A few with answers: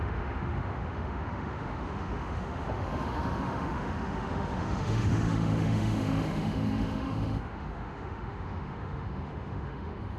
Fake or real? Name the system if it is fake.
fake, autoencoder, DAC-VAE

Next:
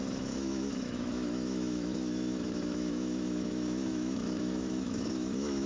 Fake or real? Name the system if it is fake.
fake, autoencoder, DAC-VAE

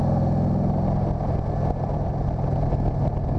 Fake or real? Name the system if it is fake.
real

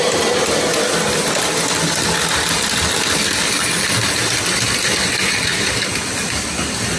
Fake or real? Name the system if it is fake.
real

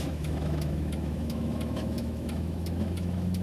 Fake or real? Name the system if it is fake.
fake, autoencoder, DAC-VAE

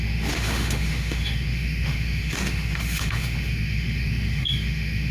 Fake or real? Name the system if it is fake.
fake, autoencoder, DAC-VAE